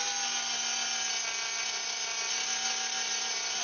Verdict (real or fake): real